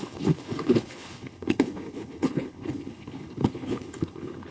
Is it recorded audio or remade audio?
remade